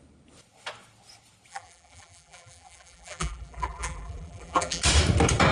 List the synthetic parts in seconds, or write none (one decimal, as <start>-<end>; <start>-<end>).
1.5-4.8